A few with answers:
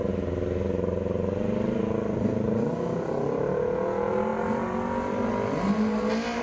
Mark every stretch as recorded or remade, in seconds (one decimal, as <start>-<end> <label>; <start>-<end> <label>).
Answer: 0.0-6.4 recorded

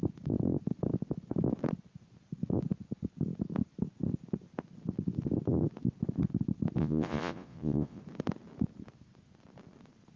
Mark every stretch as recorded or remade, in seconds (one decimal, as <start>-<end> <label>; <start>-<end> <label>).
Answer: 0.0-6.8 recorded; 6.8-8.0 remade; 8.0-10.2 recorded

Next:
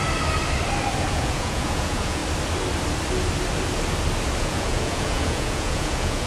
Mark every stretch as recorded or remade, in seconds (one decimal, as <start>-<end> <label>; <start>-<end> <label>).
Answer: 0.0-1.1 recorded; 1.1-2.2 remade; 2.2-4.4 recorded; 4.4-6.3 remade

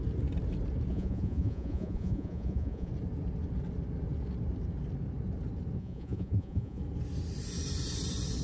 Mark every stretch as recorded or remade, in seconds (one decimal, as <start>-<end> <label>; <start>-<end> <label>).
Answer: 0.0-0.9 recorded; 0.9-2.9 remade; 2.9-5.8 recorded; 5.8-6.8 remade; 6.8-8.4 recorded

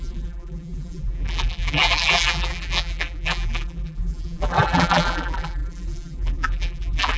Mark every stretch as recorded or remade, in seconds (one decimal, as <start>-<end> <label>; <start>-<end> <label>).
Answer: 0.0-7.2 remade

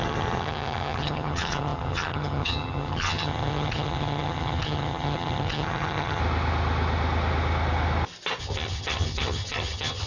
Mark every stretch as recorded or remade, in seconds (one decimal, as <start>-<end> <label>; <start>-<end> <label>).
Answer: 0.0-6.2 remade; 6.2-8.4 recorded; 8.4-10.1 remade

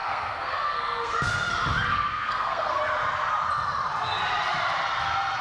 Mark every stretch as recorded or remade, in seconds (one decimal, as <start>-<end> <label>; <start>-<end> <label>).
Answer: 0.0-1.5 remade; 1.5-1.9 recorded; 1.9-2.8 remade; 2.8-5.4 recorded

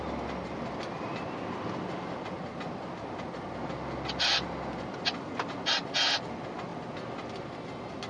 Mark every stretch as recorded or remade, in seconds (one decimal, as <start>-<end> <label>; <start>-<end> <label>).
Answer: 0.0-8.1 recorded